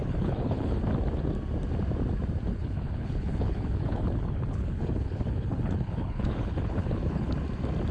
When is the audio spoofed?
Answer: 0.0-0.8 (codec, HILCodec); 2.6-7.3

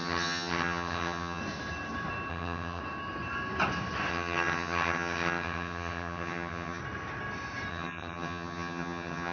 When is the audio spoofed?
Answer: 0.0-1.4 (vocoder, HiFi-GAN); 2.3-2.8; 4.1-6.8; 7.7-9.3